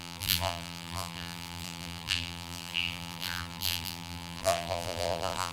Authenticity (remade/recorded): remade